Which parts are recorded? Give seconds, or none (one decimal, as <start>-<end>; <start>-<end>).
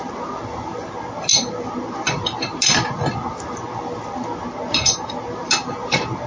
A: 0.0-6.3